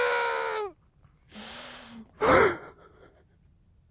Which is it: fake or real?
real